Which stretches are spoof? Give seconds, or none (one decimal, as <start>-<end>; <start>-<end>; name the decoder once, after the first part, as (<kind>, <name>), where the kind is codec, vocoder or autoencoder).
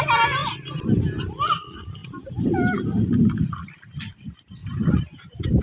2.0-3.4 (vocoder, BigVGAN v2); 4.6-5.6